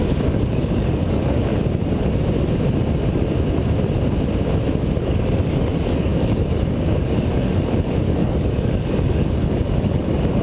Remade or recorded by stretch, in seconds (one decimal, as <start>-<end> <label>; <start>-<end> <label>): 0.0-1.5 remade; 1.5-5.0 recorded; 5.0-10.4 remade